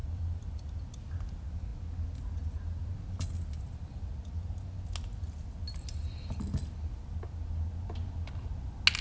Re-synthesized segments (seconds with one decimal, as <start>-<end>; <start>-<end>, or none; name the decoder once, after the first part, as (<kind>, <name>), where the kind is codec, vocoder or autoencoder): 0.0-0.8 (vocoder, BigVGAN v2)